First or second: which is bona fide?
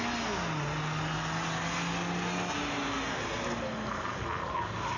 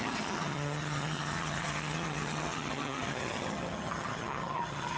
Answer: first